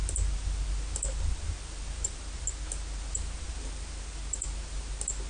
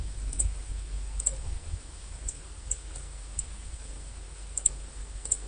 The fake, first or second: second